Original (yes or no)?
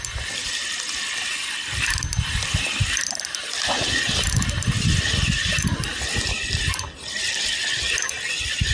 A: yes